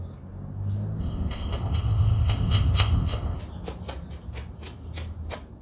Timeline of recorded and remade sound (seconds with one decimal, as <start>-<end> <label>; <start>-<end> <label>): 0.0-1.0 recorded; 1.0-3.4 remade; 3.4-5.6 recorded